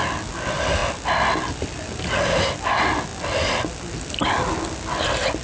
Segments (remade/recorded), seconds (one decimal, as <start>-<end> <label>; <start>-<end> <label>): 0.0-5.4 recorded